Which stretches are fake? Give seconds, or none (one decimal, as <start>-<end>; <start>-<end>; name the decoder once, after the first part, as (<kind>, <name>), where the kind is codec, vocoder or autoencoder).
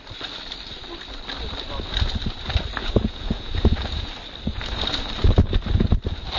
2.8-4.1 (vocoder, Vocos)